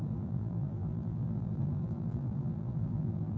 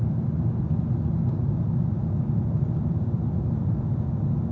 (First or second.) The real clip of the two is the second